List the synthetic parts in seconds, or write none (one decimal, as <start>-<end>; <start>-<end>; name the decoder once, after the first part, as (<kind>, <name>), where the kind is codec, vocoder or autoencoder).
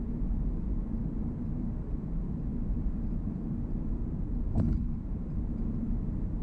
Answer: 0.0-4.0 (vocoder, BigVGAN v2); 4.5-6.4